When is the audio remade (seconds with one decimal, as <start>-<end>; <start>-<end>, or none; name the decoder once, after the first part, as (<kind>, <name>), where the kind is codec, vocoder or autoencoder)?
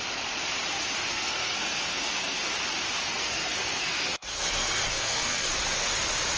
1.1-2.4 (codec, SNAC); 3.0-5.5